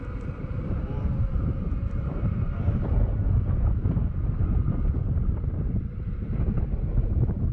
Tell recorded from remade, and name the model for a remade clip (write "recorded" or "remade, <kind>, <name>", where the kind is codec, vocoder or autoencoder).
remade, vocoder, BigVGAN v2